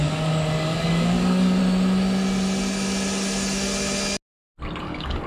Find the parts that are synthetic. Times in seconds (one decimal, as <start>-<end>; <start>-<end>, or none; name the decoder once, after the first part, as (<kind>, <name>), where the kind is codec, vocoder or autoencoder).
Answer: 0.0-1.6 (codec, DAC); 4.8-5.3